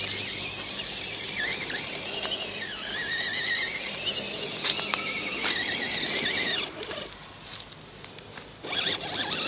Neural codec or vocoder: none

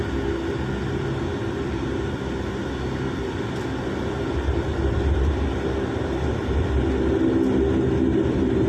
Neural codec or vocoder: none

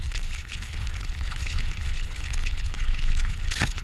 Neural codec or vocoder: codec, HILCodec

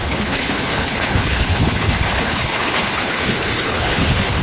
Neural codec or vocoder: codec, HILCodec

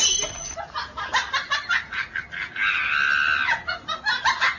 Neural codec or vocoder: none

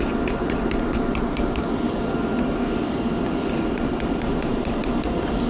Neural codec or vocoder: none